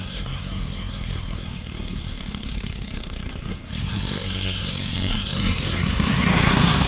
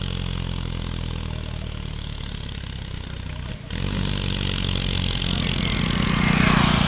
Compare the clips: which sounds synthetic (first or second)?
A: first